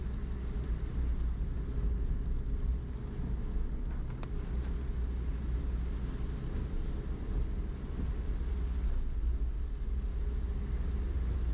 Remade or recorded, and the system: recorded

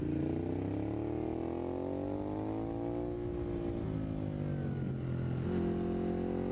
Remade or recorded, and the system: recorded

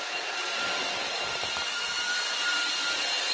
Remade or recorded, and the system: remade, vocoder, BigVGAN v2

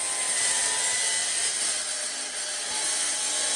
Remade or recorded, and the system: recorded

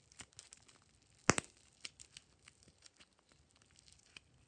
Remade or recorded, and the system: recorded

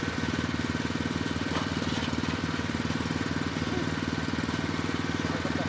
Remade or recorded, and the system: recorded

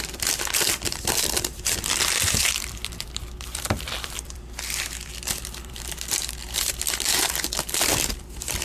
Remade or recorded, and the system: remade, vocoder, BigVGAN v2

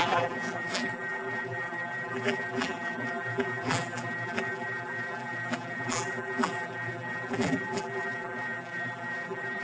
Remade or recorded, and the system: remade, vocoder, BigVGAN v2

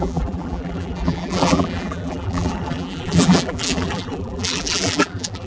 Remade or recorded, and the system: remade, vocoder, BigVGAN v2